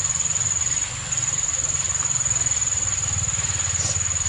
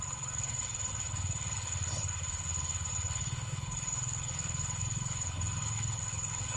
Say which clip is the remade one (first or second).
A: second